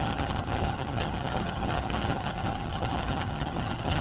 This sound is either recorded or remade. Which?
remade